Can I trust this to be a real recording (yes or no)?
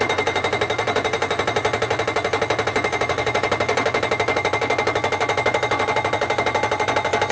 no